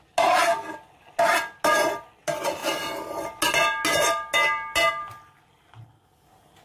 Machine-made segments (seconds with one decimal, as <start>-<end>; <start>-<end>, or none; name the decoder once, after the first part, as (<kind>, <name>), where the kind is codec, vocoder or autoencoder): none